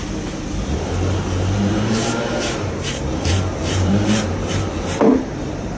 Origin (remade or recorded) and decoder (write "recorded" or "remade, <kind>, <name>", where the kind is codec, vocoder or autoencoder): remade, vocoder, BigVGAN v2